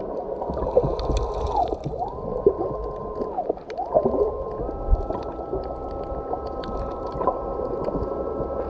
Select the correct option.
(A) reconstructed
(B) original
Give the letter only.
B